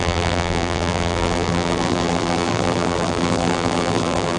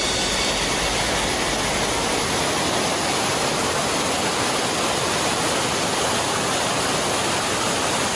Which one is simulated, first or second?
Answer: first